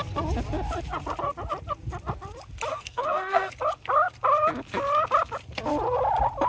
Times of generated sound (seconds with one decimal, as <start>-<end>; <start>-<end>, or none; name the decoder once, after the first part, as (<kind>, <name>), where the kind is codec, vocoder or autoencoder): 2.7-3.5 (codec, SNAC)